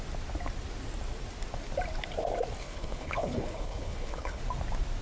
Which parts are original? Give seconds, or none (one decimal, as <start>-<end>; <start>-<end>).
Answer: 0.0-2.6; 4.4-5.0